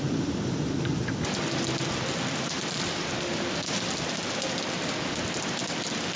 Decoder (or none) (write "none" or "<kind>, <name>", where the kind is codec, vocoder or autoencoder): vocoder, BigVGAN v2